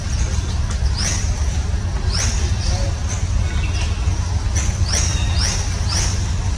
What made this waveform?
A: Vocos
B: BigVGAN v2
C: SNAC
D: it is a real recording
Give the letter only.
D